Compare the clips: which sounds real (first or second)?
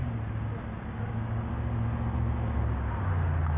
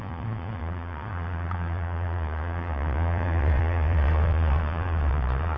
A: first